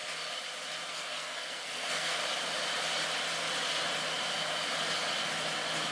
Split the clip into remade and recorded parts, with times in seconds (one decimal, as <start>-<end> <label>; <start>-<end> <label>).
0.0-0.9 recorded; 0.9-2.2 remade; 2.2-5.9 recorded